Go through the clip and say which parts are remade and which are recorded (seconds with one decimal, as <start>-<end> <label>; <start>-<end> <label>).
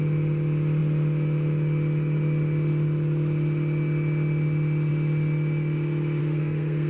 0.0-6.2 recorded; 6.2-6.9 remade